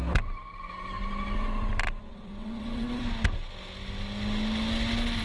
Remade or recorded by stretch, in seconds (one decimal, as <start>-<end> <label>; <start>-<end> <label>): 0.0-2.0 recorded; 2.0-3.0 remade; 3.0-5.2 recorded